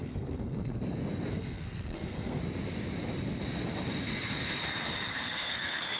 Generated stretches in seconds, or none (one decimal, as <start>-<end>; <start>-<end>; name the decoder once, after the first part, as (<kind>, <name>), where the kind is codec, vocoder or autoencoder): 0.0-0.8 (codec, SNAC); 1.3-2.4; 5.1-6.0